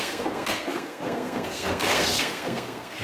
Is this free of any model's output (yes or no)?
no